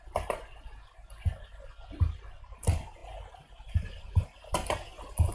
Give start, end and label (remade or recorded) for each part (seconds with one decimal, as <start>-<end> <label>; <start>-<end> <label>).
0.0-5.3 recorded